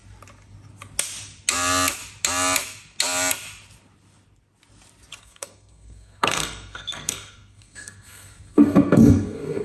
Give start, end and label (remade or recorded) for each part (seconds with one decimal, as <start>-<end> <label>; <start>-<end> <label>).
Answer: 0.0-5.2 recorded; 5.2-9.6 remade